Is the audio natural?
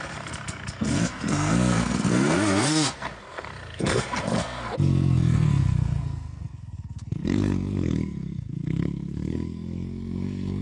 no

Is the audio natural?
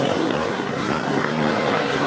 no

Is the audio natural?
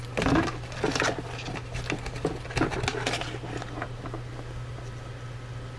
yes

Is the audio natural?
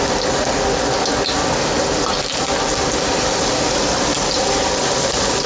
yes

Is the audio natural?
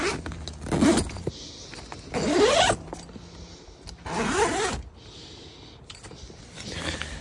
yes